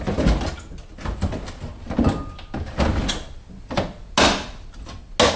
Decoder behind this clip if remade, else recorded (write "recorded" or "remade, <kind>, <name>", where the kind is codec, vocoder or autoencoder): recorded